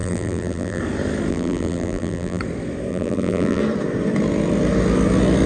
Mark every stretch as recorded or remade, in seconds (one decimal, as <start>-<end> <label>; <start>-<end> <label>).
0.0-0.8 remade; 0.8-1.3 recorded; 1.3-2.4 remade; 2.4-2.9 recorded; 2.9-3.6 remade; 3.6-5.5 recorded

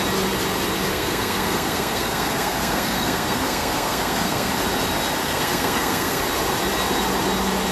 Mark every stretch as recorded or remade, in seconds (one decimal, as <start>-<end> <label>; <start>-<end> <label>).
0.0-0.9 recorded; 0.9-4.5 remade; 4.5-5.2 recorded; 5.2-6.2 remade; 6.2-7.7 recorded

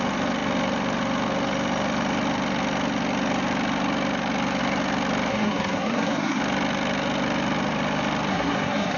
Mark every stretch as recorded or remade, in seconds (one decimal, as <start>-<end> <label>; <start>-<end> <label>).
0.0-5.3 recorded; 5.3-6.4 remade; 6.4-8.3 recorded; 8.3-9.0 remade

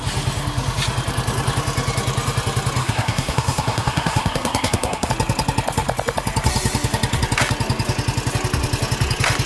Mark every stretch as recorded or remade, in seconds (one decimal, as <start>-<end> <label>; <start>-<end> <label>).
0.0-2.8 recorded; 2.8-5.1 remade; 5.1-9.5 recorded

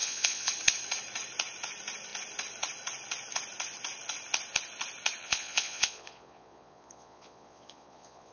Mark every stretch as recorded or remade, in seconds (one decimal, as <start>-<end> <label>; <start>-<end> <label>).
0.0-0.5 remade; 0.5-5.2 recorded; 5.2-8.3 remade

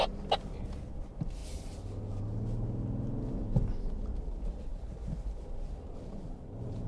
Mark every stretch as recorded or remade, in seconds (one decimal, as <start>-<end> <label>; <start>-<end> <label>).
0.0-4.7 recorded; 4.7-6.9 remade